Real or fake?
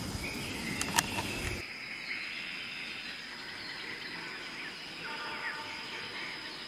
real